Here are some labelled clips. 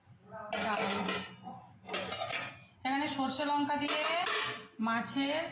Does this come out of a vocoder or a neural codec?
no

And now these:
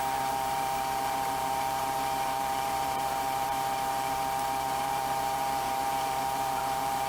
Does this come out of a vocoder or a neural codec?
yes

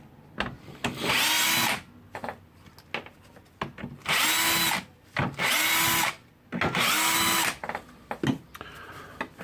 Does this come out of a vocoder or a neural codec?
no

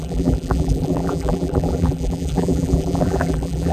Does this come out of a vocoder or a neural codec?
yes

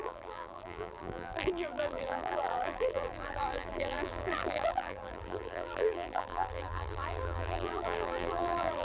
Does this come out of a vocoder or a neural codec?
yes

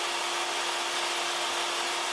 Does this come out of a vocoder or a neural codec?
no